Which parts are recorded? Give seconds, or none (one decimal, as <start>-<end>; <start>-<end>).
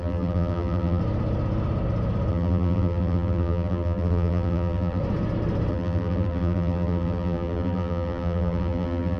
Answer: 1.0-2.3; 5.0-5.7